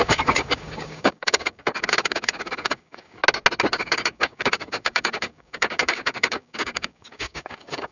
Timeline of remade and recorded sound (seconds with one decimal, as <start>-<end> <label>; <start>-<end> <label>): 0.0-3.2 remade; 3.2-3.7 recorded; 3.7-7.9 remade